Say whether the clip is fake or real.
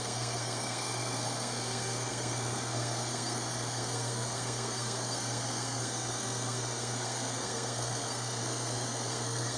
fake